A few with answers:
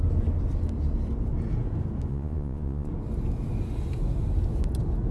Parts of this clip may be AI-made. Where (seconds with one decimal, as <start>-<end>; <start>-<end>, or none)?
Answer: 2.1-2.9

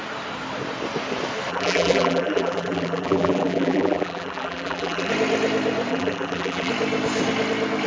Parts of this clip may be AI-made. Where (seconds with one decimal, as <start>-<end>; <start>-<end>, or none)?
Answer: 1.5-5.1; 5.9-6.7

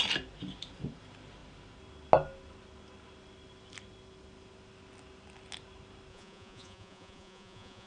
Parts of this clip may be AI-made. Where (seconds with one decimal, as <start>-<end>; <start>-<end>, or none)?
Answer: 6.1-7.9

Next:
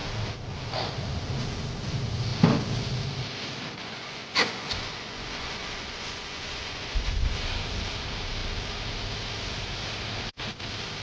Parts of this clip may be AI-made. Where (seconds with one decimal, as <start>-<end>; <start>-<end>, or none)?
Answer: 3.8-7.4

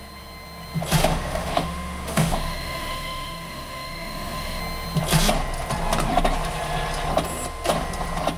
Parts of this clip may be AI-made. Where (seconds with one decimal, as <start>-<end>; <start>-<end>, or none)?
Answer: 1.0-4.6

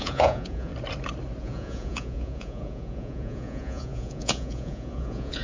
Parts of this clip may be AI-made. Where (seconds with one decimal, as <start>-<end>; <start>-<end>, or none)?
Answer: 0.0-0.7; 1.4-5.4